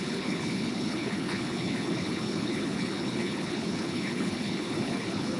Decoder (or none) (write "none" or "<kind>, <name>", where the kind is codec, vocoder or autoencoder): codec, HILCodec